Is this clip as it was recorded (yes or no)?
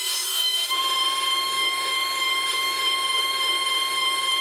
no